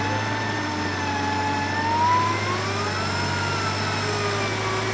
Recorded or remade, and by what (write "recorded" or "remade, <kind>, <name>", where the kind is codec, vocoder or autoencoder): recorded